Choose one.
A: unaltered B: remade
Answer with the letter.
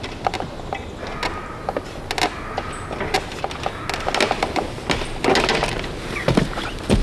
A